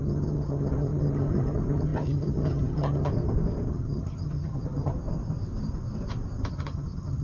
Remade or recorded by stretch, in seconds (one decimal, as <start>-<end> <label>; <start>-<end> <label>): 0.0-3.1 remade; 3.1-3.7 recorded; 3.7-4.9 remade; 4.9-6.5 recorded; 6.5-7.2 remade